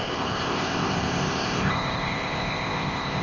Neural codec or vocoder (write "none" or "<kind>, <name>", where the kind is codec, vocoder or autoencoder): codec, ZipCodec